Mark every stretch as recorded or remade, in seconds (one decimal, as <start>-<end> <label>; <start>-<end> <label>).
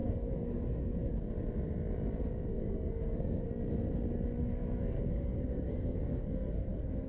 0.0-1.1 remade; 1.1-2.5 recorded; 2.5-3.5 remade; 3.5-4.4 recorded; 4.4-7.1 remade